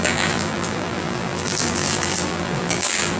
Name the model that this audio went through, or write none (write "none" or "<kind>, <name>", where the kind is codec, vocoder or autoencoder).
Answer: vocoder, BigVGAN v2